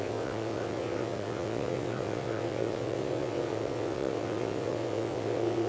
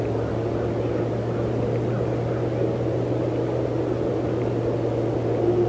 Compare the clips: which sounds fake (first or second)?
first